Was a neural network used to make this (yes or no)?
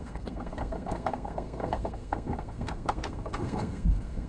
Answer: yes